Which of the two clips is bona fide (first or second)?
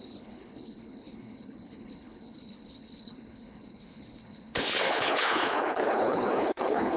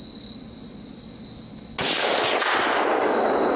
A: second